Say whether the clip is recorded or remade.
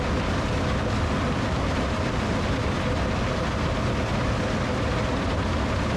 recorded